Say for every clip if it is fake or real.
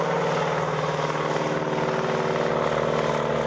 real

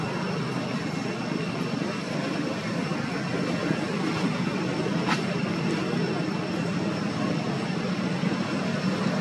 real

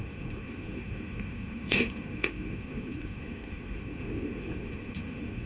fake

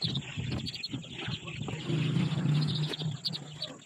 real